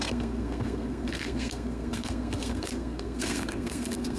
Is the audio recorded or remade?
remade